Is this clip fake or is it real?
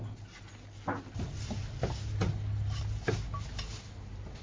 real